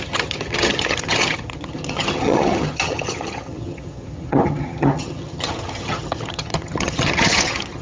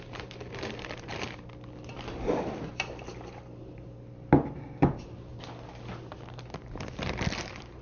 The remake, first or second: first